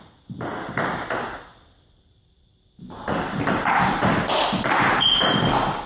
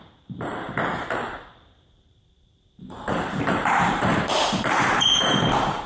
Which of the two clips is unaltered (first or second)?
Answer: first